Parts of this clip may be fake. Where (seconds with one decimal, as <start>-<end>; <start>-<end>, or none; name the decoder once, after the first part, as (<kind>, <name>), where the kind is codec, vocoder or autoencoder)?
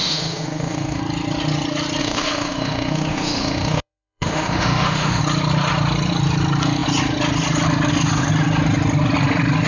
0.0-1.0 (autoencoder, DAC-VAE); 2.0-5.2